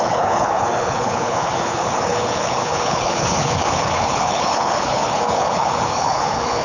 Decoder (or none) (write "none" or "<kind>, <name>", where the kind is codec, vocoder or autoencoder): codec, HILCodec